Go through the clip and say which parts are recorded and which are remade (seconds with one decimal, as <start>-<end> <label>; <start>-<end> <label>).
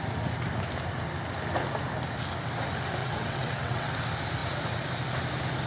0.0-3.0 recorded; 3.0-3.9 remade; 3.9-5.7 recorded